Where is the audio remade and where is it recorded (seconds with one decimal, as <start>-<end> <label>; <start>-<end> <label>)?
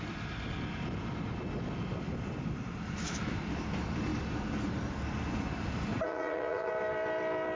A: 0.0-5.9 recorded; 5.9-6.7 remade; 6.7-7.6 recorded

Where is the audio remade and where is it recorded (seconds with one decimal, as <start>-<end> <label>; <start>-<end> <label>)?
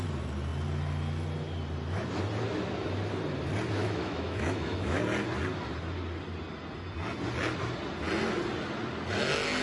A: 0.0-3.8 recorded; 3.8-5.0 remade; 5.0-9.6 recorded